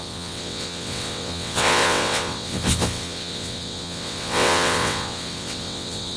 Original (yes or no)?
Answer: no